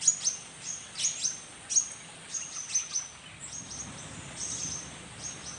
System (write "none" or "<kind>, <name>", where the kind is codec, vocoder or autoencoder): none